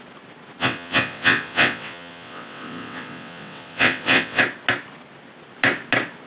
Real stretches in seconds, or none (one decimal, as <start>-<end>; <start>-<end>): 0.0-0.6; 4.4-6.3